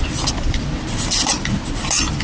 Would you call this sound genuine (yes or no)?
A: yes